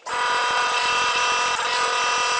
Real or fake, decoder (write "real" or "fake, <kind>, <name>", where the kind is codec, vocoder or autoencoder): real